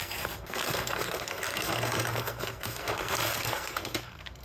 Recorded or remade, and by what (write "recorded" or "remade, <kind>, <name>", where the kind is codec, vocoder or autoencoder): remade, codec, SNAC